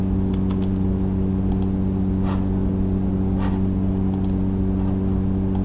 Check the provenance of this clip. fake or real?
real